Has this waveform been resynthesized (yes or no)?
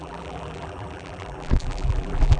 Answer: yes